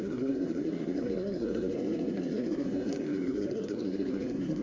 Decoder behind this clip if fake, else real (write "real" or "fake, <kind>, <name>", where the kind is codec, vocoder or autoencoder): fake, codec, SNAC